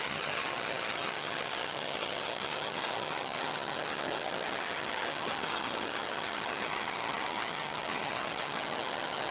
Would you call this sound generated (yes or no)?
yes